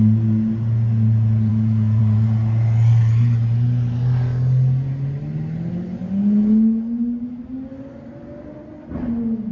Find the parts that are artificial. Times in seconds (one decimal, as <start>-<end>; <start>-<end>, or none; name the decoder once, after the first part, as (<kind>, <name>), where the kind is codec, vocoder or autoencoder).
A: 1.5-2.0 (autoencoder, DAC-VAE)